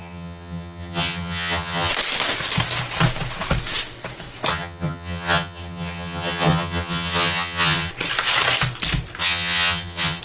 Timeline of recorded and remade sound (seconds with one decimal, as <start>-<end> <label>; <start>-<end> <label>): 0.0-1.9 remade; 1.9-4.5 recorded; 4.5-7.9 remade; 7.9-9.2 recorded; 9.2-10.2 remade